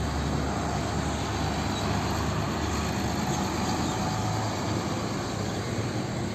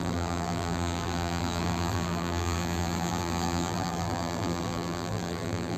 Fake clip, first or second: second